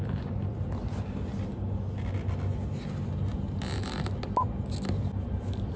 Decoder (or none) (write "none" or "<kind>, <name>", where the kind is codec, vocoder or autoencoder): none